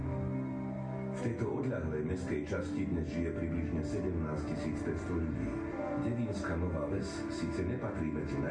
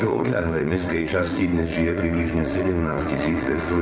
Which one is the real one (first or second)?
first